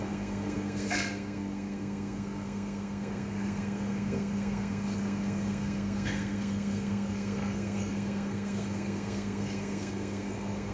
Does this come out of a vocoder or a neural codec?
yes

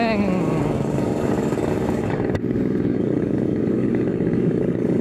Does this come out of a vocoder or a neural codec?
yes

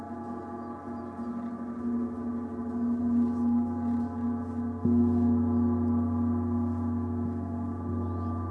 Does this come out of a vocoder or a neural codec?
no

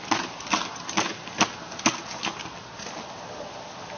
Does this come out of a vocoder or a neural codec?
no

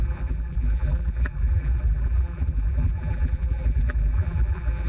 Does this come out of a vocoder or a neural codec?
yes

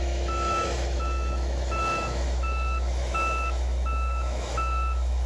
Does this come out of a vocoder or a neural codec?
yes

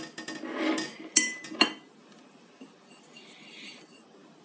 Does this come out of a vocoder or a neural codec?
no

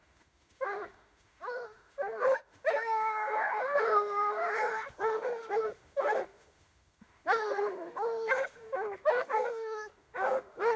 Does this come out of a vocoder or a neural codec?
yes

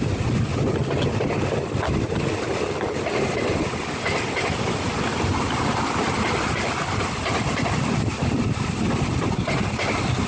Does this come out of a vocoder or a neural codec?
no